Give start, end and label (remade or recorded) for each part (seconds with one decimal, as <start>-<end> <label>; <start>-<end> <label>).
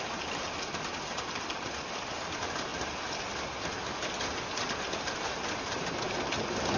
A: 0.0-6.8 recorded